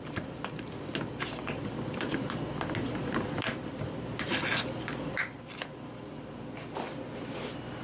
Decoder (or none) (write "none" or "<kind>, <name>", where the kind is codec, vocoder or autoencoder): vocoder, BigVGAN v2